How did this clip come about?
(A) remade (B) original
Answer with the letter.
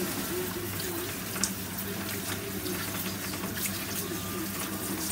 B